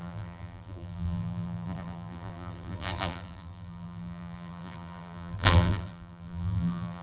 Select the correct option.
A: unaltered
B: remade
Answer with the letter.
B